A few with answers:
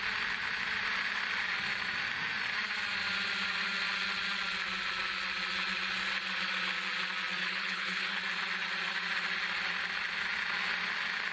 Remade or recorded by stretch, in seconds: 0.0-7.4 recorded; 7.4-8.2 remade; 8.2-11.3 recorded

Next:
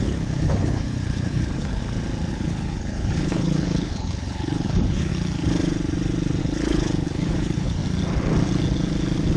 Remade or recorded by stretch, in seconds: 0.0-1.8 remade; 1.8-2.3 recorded; 2.3-5.1 remade; 5.1-6.4 recorded; 6.4-7.8 remade; 7.8-9.4 recorded

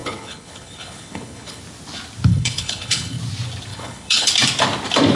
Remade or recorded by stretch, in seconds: 0.0-1.6 remade; 1.6-2.3 recorded; 2.3-3.2 remade; 3.2-3.7 recorded; 3.7-4.3 remade; 4.3-5.2 recorded

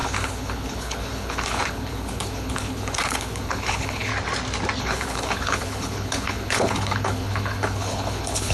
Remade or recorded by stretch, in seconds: 0.0-4.1 remade; 4.1-4.8 recorded; 4.8-8.5 remade